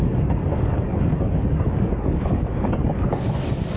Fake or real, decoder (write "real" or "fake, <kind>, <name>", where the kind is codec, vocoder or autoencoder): fake, codec, DAC